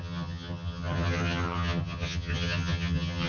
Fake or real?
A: fake